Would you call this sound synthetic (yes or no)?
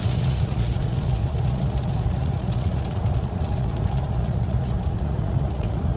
yes